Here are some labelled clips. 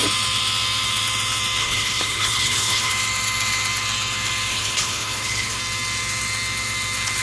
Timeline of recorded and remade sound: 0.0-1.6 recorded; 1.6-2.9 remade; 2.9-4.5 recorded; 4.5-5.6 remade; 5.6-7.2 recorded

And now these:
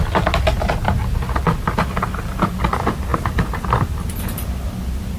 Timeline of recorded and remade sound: 0.0-5.2 remade

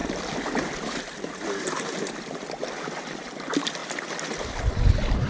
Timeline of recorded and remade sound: 0.0-5.3 recorded